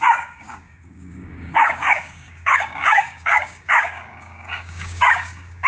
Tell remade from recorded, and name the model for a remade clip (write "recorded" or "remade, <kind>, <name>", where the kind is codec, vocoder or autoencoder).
remade, codec, DAC